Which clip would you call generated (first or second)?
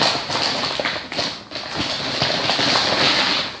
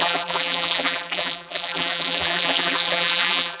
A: second